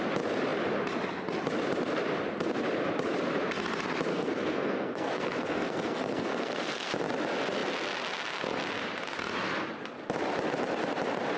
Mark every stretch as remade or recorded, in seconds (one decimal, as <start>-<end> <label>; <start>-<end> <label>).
0.0-4.1 recorded; 4.1-6.9 remade; 6.9-11.4 recorded